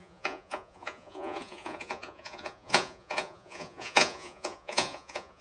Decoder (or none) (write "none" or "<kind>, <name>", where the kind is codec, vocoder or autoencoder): vocoder, Vocos